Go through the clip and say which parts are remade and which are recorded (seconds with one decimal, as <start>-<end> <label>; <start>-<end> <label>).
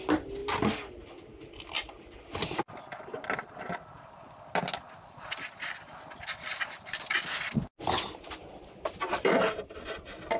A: 0.0-10.4 recorded